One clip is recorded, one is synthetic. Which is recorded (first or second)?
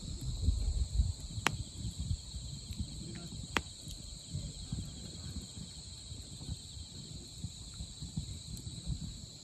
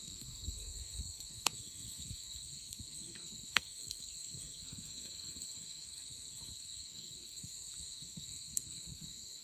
first